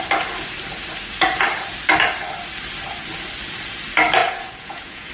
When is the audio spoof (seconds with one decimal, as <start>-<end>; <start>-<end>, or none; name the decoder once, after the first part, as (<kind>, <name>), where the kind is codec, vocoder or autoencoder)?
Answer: 4.2-5.1 (vocoder, Vocos)